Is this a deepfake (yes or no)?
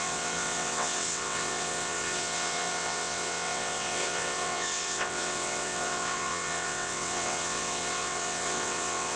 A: yes